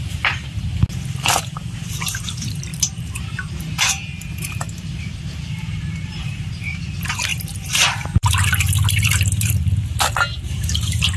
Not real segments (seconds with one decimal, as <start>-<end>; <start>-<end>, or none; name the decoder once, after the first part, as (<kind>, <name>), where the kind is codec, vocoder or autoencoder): 2.7-6.8 (vocoder, BigVGAN v2); 7.3-8.3